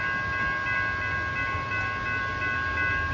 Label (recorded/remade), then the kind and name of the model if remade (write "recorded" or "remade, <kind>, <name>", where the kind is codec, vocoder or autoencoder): recorded